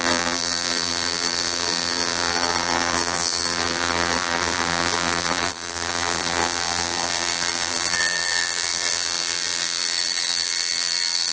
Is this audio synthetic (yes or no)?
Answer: yes